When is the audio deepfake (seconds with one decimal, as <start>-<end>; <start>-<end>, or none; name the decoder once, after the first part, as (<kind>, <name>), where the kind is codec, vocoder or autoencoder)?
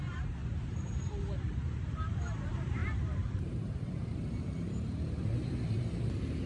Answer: 0.0-6.5 (vocoder, BigVGAN v2)